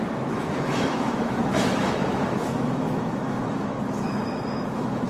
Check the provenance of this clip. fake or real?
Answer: fake